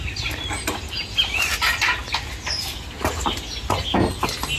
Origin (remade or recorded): recorded